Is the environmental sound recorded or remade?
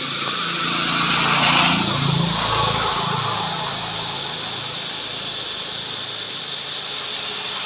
recorded